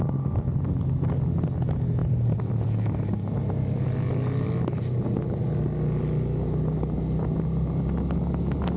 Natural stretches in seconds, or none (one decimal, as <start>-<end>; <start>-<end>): 0.0-2.0; 3.0-8.8